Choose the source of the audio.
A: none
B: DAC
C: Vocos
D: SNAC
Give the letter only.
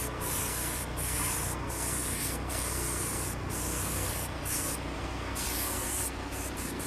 D